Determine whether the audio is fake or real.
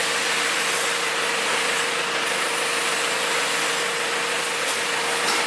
real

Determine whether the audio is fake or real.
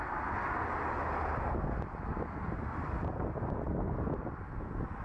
real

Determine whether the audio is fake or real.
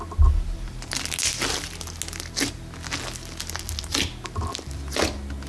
real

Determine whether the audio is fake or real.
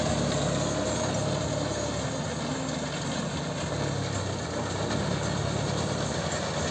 real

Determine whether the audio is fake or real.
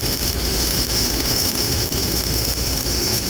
fake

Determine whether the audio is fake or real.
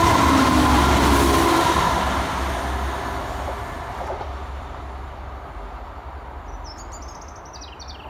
real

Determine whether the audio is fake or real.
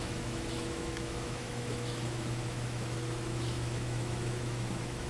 fake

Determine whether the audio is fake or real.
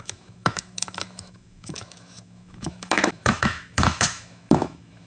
fake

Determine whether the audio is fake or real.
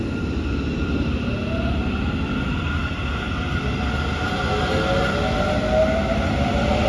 real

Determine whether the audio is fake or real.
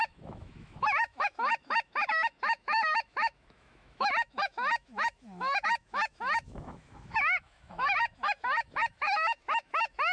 fake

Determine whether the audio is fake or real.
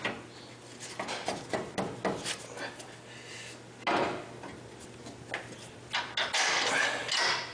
real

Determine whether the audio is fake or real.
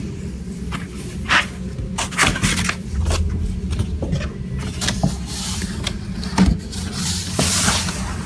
real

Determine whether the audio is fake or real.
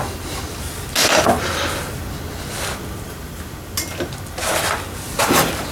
real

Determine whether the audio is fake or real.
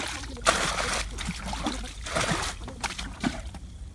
real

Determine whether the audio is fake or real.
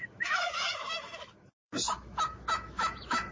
fake